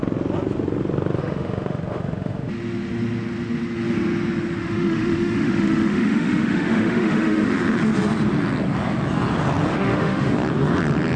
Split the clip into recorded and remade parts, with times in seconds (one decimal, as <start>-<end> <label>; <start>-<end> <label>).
0.0-1.2 recorded; 1.2-2.5 remade; 2.5-4.6 recorded; 4.6-7.5 remade; 7.5-9.7 recorded; 9.7-10.3 remade; 10.3-11.2 recorded